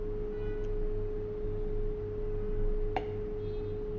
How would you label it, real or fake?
real